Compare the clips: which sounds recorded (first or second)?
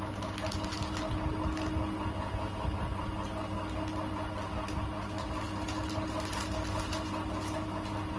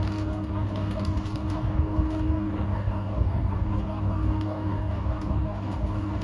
first